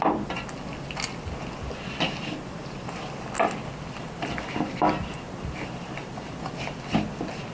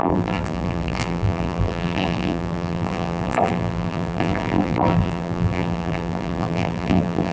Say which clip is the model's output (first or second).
second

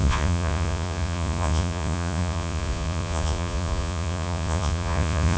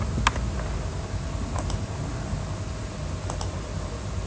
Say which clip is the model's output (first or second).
first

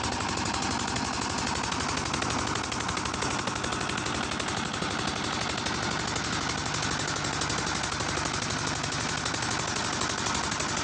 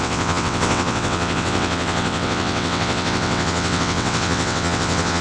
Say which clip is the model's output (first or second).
second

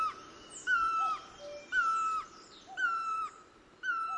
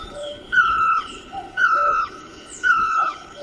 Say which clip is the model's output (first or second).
second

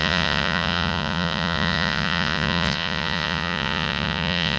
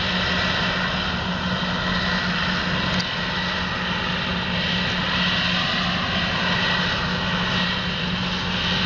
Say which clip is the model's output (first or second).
first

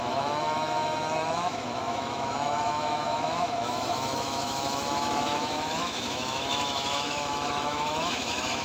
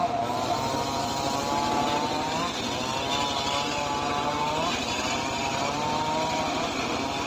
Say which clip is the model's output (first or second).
first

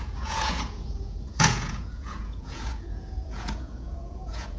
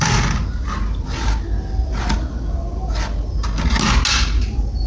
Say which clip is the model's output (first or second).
first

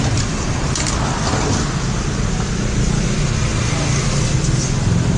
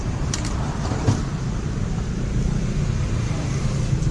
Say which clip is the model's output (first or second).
second